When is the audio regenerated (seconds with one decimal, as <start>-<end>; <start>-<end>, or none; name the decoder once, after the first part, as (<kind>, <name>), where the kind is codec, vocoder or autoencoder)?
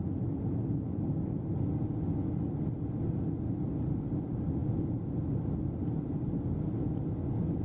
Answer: none